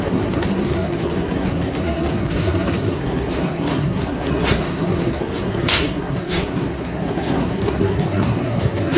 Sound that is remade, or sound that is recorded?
remade